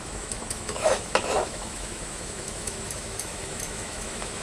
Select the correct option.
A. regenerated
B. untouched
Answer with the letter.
A